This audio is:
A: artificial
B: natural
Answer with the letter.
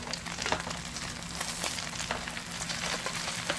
B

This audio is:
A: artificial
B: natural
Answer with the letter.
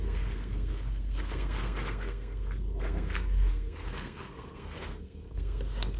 A